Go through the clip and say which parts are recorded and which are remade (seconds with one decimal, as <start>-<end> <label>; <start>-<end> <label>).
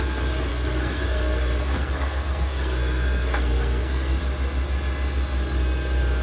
0.0-0.5 recorded; 0.5-4.2 remade; 4.2-6.2 recorded